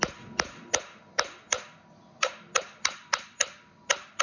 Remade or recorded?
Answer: recorded